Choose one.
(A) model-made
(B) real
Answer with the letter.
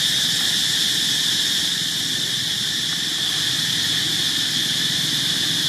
B